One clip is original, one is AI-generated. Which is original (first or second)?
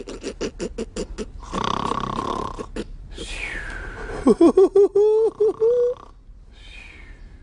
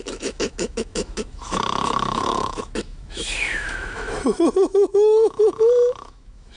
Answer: first